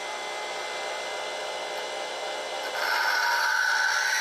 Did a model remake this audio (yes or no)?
no